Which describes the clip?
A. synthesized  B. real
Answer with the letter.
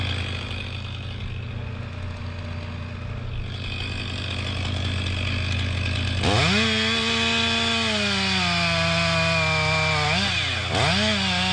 B